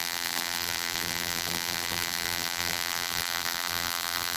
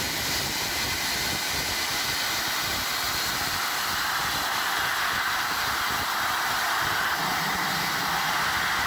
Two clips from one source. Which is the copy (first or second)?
first